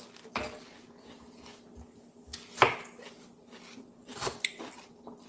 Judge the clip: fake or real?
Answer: real